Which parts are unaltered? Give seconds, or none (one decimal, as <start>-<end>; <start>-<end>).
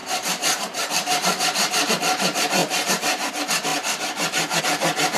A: 1.9-2.6; 3.3-5.2